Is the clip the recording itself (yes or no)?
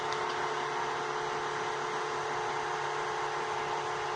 yes